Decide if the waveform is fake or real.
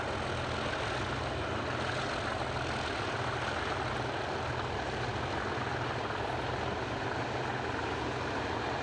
real